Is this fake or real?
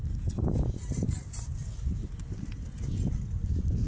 real